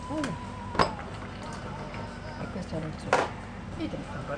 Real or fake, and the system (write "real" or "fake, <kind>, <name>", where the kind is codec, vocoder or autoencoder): real